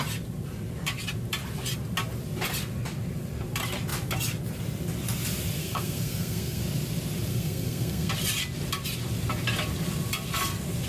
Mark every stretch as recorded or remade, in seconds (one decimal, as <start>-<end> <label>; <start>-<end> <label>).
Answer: 0.0-5.6 recorded; 5.6-6.6 remade; 6.6-7.3 recorded; 7.3-8.1 remade; 8.1-10.9 recorded

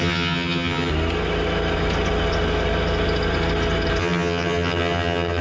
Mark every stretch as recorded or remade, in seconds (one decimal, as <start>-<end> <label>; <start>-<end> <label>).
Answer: 0.0-0.9 remade; 0.9-4.0 recorded; 4.0-5.4 remade

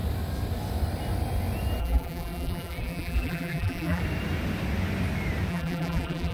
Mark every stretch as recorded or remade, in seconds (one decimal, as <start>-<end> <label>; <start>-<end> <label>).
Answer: 0.0-1.8 recorded; 1.8-4.0 remade; 4.0-5.5 recorded; 5.5-6.3 remade